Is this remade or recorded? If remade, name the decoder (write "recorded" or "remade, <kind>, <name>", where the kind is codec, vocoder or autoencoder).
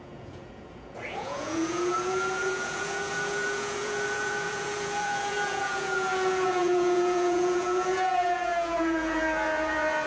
remade, vocoder, Vocos